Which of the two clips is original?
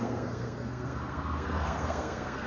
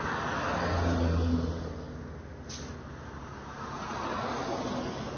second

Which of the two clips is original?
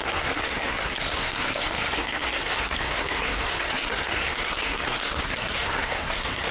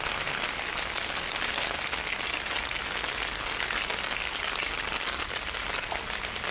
second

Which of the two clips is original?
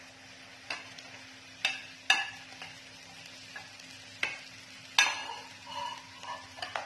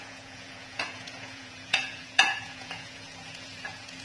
first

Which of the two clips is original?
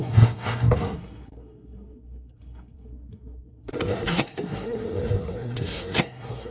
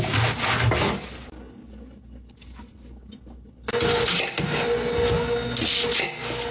second